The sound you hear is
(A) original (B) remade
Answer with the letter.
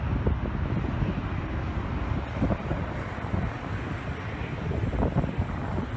A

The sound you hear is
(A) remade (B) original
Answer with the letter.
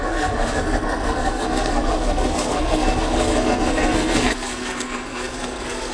A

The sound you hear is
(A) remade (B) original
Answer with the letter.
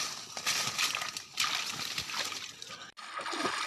B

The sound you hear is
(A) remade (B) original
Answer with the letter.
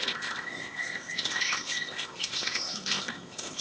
A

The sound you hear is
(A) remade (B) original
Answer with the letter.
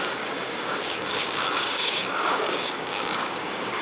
A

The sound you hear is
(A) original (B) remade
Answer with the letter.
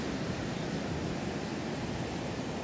A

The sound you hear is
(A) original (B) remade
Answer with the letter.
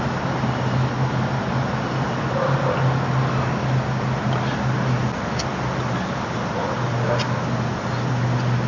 A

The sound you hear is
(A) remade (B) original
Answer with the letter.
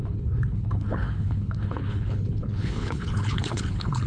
A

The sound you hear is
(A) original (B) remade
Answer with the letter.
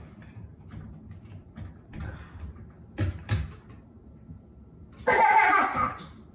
A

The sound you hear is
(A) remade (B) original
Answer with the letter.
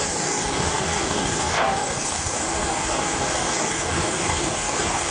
A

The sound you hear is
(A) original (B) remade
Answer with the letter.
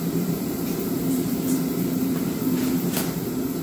B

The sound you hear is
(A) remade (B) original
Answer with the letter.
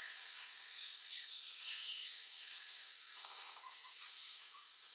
A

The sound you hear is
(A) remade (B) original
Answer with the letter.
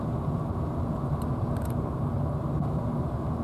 A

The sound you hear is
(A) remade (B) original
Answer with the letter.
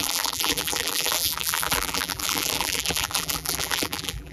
A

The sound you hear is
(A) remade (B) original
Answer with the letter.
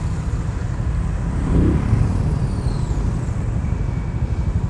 B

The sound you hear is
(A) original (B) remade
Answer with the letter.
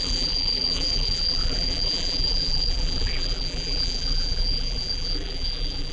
B